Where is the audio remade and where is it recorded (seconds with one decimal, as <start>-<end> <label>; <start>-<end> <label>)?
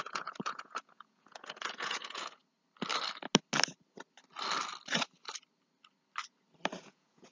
0.0-2.4 remade; 2.4-6.8 recorded; 6.8-7.3 remade